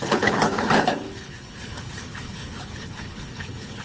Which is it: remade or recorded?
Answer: remade